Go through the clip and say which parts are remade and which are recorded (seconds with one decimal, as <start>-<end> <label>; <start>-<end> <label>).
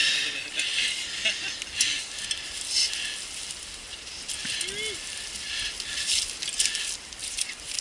0.0-7.2 recorded; 7.2-7.8 remade